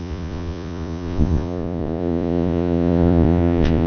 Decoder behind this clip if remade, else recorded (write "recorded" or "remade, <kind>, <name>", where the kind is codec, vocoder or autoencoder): remade, vocoder, Vocos